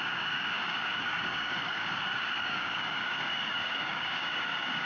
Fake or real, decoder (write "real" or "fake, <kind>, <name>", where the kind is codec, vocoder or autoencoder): fake, codec, DAC